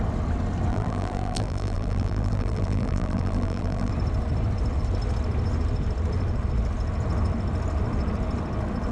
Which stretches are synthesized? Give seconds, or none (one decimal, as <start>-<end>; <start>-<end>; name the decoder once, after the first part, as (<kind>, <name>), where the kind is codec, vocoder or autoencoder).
0.7-3.9 (vocoder, BigVGAN v2)